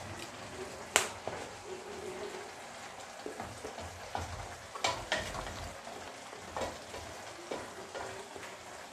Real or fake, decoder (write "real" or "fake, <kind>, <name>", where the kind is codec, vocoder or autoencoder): real